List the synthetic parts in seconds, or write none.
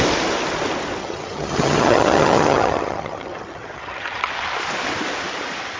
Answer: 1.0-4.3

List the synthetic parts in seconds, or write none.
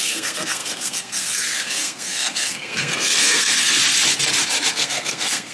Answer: 0.0-3.8; 4.7-5.5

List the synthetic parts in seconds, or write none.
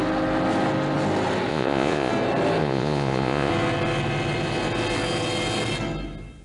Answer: 1.5-2.1; 2.6-3.5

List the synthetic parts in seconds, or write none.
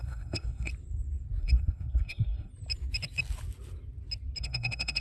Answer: 0.0-0.7; 1.4-2.5; 4.4-5.0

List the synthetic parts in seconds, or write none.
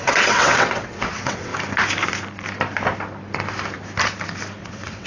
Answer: 0.0-1.5; 4.6-5.1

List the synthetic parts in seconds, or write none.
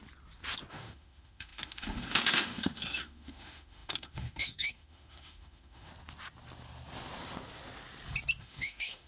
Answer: 0.7-5.9; 8.4-9.1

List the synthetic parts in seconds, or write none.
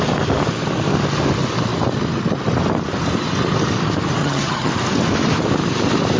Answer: 4.2-4.7